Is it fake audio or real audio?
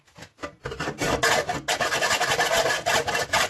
real